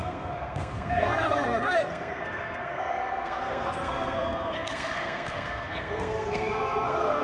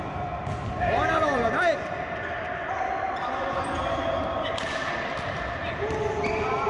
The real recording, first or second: second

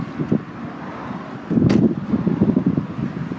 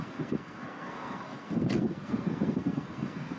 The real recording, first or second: first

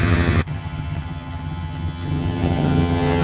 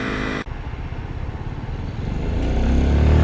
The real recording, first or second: second